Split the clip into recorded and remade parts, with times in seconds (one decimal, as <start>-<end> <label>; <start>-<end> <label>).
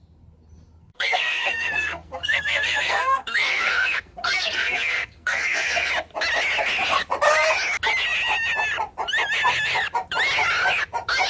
0.0-0.8 recorded; 0.8-5.9 remade; 5.9-11.3 recorded